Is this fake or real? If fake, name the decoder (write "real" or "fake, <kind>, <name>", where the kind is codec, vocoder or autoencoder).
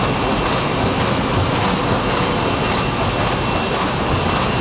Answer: real